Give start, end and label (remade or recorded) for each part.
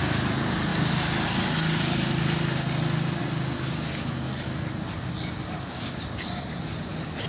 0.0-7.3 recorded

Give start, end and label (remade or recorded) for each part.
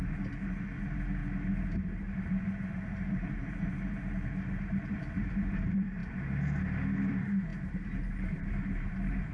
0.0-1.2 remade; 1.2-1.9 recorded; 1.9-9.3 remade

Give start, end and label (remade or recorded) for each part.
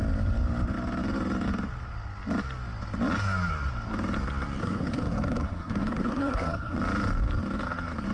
0.0-4.6 recorded; 4.6-6.8 remade; 6.8-8.1 recorded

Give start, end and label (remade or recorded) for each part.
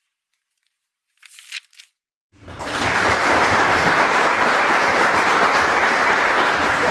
0.0-1.0 remade; 1.0-4.7 recorded; 4.7-6.9 remade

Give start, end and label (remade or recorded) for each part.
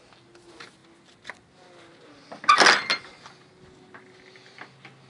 0.0-5.1 recorded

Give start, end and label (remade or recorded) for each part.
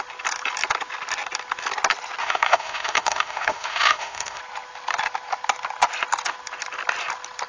0.0-2.2 recorded; 2.2-4.4 remade; 4.4-7.5 recorded